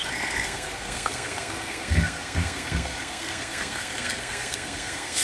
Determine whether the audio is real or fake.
fake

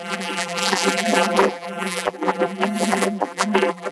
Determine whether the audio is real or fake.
fake